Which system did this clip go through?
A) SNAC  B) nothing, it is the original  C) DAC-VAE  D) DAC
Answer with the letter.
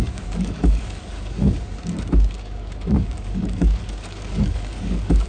D